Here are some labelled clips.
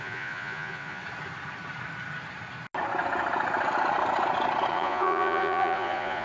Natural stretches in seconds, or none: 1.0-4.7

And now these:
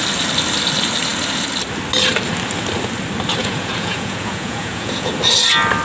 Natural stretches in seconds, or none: 0.0-3.4; 5.1-5.8

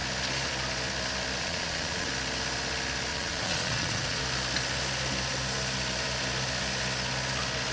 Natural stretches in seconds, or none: 0.0-1.4; 2.1-3.1; 4.2-7.7

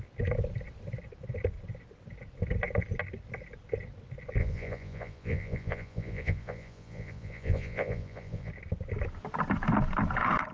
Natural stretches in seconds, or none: 0.0-4.4; 8.5-10.5

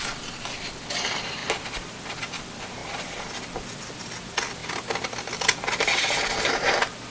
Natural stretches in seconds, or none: 0.0-7.1